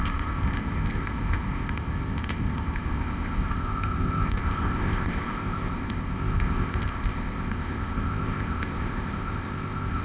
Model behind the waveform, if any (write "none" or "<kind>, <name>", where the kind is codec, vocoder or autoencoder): codec, ZipCodec